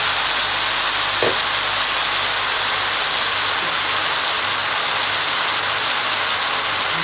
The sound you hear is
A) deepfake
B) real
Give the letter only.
B